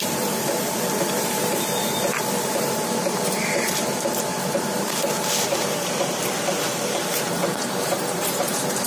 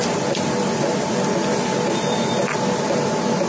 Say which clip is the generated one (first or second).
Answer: first